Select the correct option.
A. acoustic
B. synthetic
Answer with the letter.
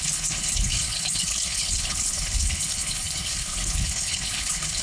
B